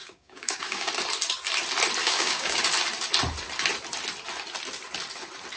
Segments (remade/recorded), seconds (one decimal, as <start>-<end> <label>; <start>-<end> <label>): 0.0-0.9 remade; 0.9-2.0 recorded; 2.0-2.6 remade; 2.6-5.6 recorded